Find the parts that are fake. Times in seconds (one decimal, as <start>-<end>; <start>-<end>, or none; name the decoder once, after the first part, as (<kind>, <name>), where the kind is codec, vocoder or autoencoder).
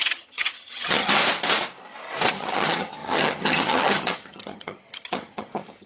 0.0-1.2 (vocoder, HiFi-GAN); 2.3-5.9